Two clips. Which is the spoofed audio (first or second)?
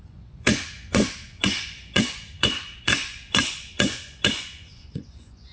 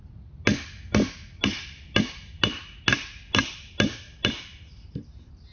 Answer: first